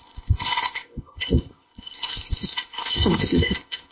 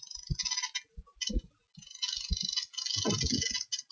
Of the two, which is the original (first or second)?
second